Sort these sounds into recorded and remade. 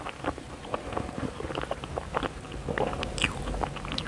recorded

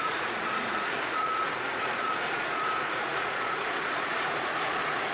remade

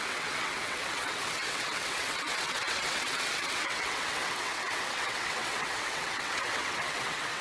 remade